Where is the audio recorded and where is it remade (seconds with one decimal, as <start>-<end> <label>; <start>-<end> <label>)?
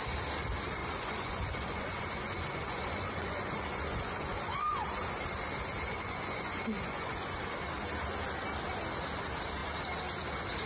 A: 0.0-0.8 recorded; 0.8-5.1 remade; 5.1-5.9 recorded; 5.9-7.4 remade; 7.4-10.7 recorded